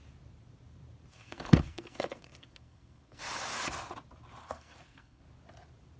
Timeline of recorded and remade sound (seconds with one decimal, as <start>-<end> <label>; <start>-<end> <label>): 0.0-1.1 recorded; 1.1-3.2 remade; 3.2-4.4 recorded; 4.4-5.2 remade; 5.2-6.0 recorded